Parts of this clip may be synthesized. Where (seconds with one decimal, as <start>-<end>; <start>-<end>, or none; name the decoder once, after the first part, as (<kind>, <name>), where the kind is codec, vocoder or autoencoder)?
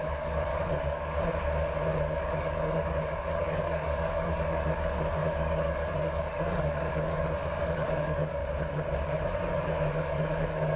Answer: 0.0-0.5 (codec, DAC); 2.2-8.4; 9.4-10.8